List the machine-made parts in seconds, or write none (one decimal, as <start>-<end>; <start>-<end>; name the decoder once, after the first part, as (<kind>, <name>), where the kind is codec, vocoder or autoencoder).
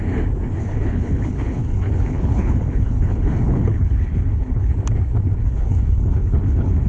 0.6-4.7 (codec, HILCodec); 5.4-6.9